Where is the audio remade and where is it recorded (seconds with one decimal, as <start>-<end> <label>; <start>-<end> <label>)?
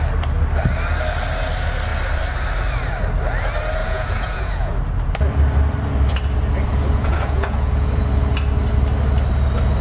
0.0-3.8 recorded; 3.8-4.7 remade; 4.7-6.7 recorded; 6.7-8.0 remade; 8.0-9.8 recorded